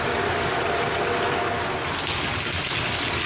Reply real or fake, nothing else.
real